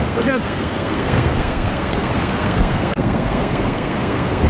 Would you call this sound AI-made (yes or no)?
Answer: yes